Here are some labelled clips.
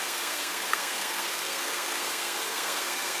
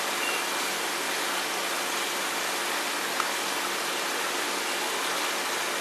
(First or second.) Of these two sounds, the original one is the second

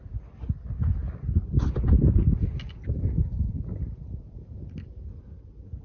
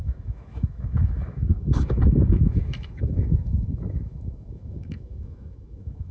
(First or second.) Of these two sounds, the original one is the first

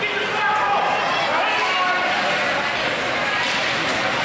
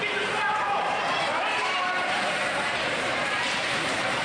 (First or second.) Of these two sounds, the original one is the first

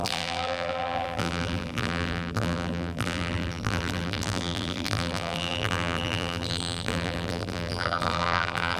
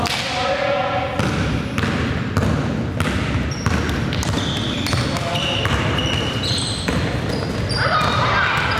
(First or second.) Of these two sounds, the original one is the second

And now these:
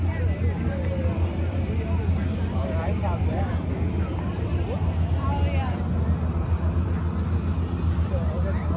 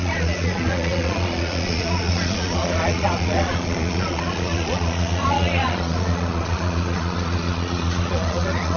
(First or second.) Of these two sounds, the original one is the first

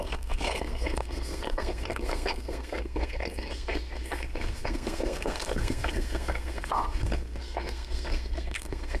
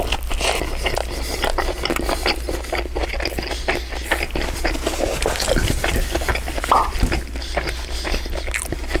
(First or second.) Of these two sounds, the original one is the second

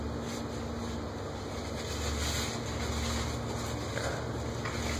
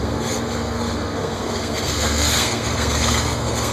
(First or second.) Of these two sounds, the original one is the first